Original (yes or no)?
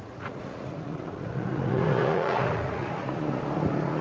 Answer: no